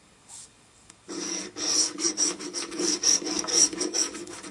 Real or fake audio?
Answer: fake